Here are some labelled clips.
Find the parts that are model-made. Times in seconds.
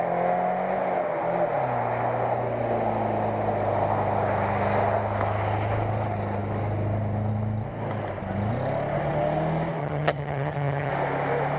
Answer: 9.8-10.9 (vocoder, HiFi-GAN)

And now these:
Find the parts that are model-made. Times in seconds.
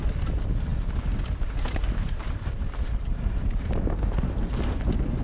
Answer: none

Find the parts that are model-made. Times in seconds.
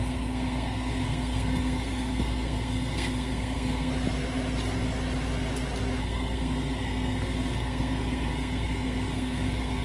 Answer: 0.0-3.9 (codec, SNAC); 6.0-9.8